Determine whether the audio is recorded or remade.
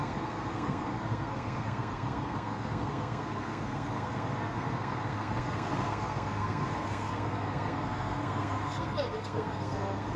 remade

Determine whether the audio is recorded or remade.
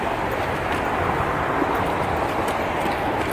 recorded